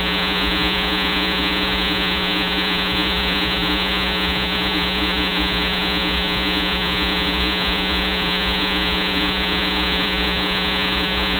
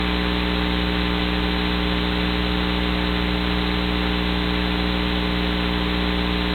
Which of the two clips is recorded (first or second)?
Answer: second